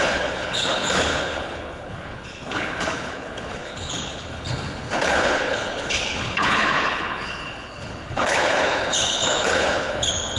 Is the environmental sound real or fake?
fake